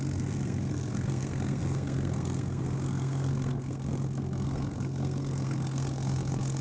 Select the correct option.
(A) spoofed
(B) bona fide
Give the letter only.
A